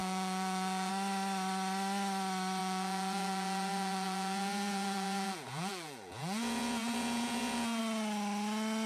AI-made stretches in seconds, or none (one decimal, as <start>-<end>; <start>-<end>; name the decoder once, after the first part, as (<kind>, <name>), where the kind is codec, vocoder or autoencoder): 0.0-0.9 (vocoder, Vocos); 2.6-7.8